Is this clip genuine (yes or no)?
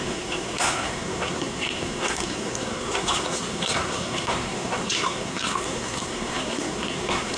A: no